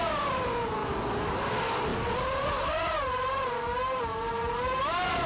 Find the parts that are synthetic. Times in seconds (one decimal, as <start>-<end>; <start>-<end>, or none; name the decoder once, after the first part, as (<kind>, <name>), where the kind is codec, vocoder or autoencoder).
none